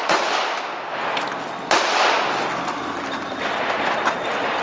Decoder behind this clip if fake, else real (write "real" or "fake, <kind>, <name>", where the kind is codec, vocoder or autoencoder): real